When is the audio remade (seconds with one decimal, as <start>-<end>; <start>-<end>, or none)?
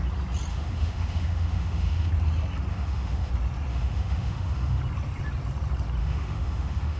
0.5-2.1; 2.7-3.3; 3.7-4.8; 6.0-7.0